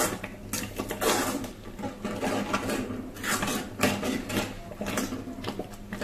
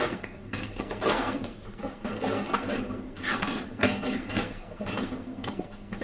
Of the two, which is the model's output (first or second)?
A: second